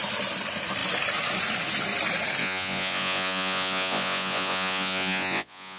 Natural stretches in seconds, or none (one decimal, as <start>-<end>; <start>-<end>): 0.0-2.4